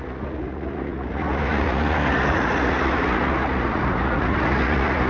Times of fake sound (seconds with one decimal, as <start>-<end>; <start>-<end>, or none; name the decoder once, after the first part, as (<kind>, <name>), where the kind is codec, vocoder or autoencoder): 0.0-5.1 (vocoder, Vocos)